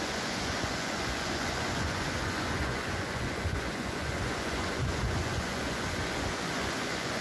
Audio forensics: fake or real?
fake